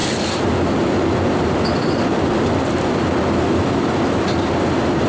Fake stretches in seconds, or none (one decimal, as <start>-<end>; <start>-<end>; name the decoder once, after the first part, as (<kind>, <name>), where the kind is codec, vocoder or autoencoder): none